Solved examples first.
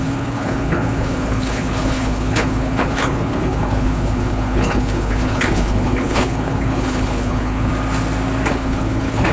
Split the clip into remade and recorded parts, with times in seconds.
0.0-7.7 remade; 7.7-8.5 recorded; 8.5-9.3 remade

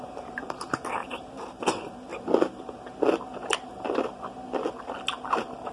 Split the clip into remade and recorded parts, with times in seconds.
0.0-2.1 remade; 2.1-5.3 recorded; 5.3-5.7 remade

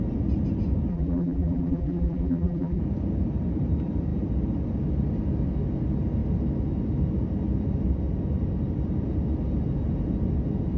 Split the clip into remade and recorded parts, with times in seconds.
0.0-0.9 recorded; 0.9-2.8 remade; 2.8-10.8 recorded

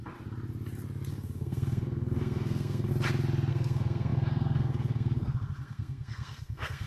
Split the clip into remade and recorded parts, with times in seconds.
0.0-1.1 recorded; 1.1-2.9 remade; 2.9-3.5 recorded; 3.5-6.9 remade

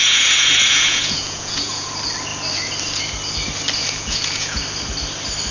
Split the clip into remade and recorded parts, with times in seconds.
0.0-1.9 remade; 1.9-3.8 recorded; 3.8-4.6 remade; 4.6-5.5 recorded

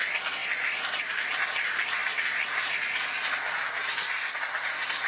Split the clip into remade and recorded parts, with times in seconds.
0.0-5.1 recorded